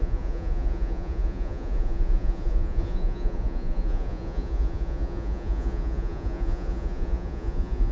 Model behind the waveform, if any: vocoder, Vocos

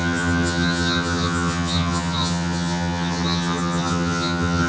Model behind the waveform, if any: vocoder, HiFi-GAN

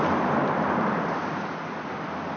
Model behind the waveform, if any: none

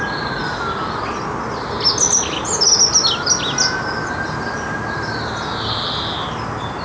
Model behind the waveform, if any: none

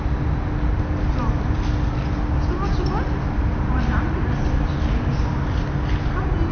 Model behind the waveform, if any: none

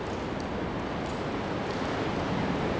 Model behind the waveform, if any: none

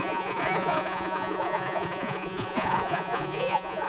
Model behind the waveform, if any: vocoder, Vocos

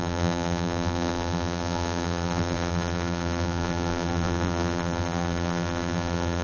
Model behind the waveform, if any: vocoder, BigVGAN v2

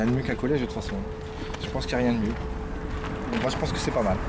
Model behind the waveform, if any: none